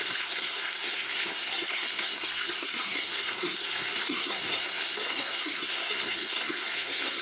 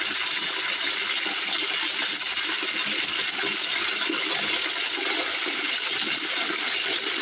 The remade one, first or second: first